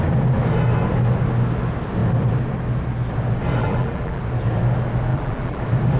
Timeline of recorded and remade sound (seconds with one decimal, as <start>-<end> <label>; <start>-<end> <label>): 0.0-3.6 recorded; 3.6-4.2 remade; 4.2-5.1 recorded; 5.1-5.6 remade; 5.6-6.0 recorded